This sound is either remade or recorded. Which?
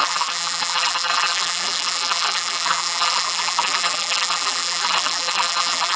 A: remade